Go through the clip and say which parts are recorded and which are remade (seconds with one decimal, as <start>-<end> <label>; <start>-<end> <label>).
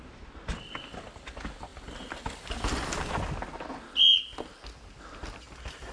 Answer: 0.0-5.9 recorded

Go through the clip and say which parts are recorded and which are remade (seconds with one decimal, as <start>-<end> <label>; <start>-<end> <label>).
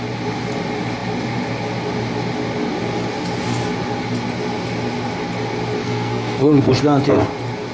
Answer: 0.0-5.8 recorded; 5.8-6.7 remade; 6.7-7.7 recorded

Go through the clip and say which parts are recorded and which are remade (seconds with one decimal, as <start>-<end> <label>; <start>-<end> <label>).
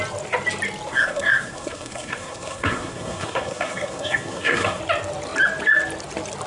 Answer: 0.0-0.9 recorded; 0.9-4.8 remade; 4.8-6.5 recorded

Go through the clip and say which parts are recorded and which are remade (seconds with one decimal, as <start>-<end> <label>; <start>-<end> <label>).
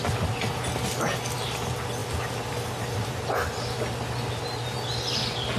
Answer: 0.0-5.6 recorded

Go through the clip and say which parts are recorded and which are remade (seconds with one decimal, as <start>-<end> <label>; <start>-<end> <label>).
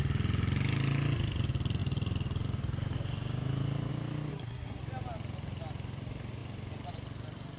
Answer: 0.0-4.3 recorded; 4.3-4.8 remade; 4.8-7.6 recorded